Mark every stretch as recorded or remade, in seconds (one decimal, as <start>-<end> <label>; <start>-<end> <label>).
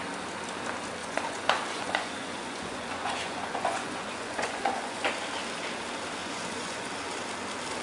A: 0.0-1.0 recorded; 1.0-5.1 remade; 5.1-6.2 recorded; 6.2-6.9 remade; 6.9-7.8 recorded